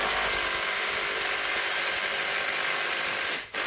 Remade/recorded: recorded